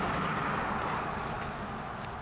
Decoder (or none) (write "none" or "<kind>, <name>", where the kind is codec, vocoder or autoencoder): none